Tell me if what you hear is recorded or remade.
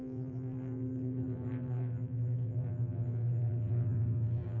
remade